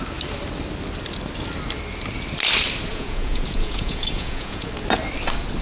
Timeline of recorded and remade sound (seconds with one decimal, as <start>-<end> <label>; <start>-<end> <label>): 0.0-2.9 recorded; 2.9-4.7 remade; 4.7-5.6 recorded